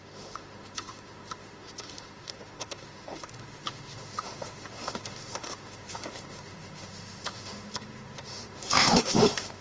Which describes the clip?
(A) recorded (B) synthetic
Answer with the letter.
B